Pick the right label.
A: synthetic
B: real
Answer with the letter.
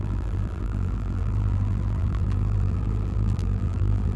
A